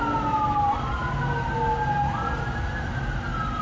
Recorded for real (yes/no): yes